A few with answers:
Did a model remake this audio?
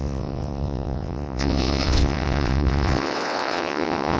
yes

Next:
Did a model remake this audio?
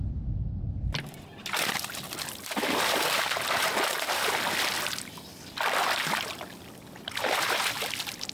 no